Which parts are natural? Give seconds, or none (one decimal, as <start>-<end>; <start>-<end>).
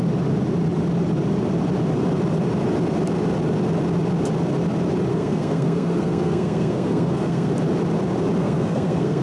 0.0-5.1; 7.5-8.4